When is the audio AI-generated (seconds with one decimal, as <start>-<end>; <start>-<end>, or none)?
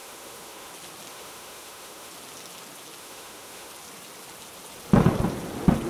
0.0-0.7; 1.1-2.1; 3.0-3.7